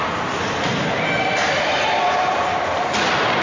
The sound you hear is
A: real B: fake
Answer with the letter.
A